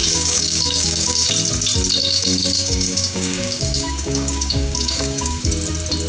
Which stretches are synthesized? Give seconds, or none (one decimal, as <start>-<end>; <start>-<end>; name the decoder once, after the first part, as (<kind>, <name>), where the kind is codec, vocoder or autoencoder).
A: 0.0-1.3 (codec, DAC); 2.0-5.5